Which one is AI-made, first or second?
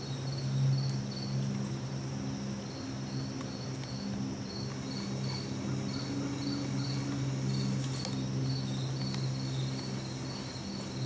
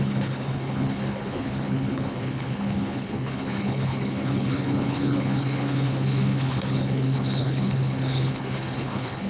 second